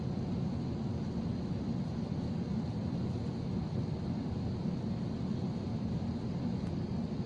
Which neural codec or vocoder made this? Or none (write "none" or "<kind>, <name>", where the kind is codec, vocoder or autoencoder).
none